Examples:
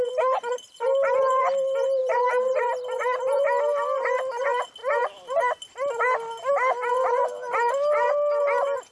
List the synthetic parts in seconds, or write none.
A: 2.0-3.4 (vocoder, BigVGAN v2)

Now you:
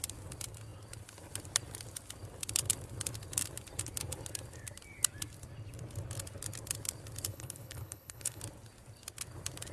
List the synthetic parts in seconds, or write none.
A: 7.3-8.4 (codec, HILCodec)

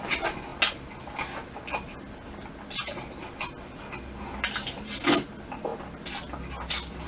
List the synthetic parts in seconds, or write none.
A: none

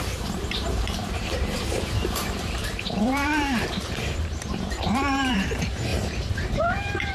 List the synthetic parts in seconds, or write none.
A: 0.0-7.1 (vocoder, BigVGAN v2)